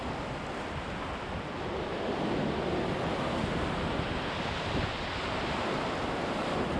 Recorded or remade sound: recorded